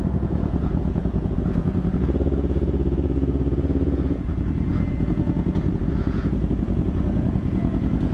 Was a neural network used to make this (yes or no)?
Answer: yes